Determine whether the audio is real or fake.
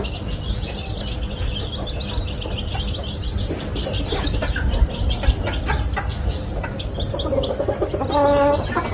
real